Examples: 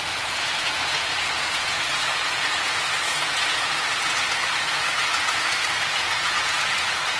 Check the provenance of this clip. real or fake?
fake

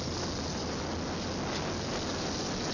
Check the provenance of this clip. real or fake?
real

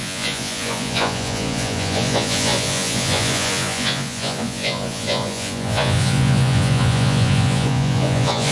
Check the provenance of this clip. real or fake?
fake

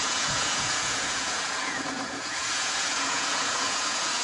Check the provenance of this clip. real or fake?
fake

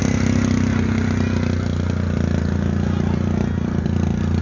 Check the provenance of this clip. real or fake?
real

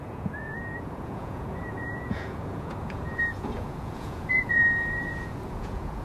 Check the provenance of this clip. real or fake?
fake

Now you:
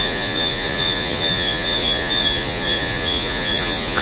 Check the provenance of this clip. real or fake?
fake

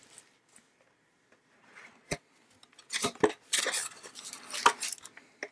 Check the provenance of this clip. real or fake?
real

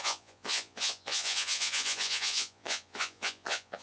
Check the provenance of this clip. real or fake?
fake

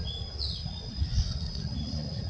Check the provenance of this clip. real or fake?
fake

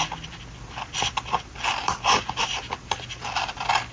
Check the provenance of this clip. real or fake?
real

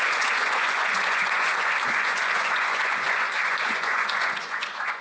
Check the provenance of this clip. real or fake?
fake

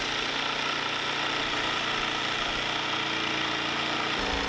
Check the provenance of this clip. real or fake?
real